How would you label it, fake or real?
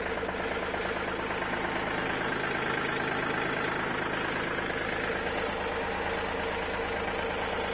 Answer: real